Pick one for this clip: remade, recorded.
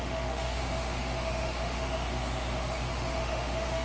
remade